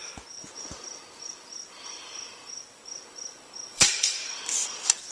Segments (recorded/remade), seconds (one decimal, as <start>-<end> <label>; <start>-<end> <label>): 0.0-3.7 recorded; 3.7-4.4 remade; 4.4-5.1 recorded